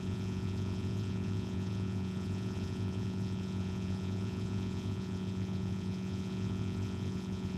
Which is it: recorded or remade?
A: remade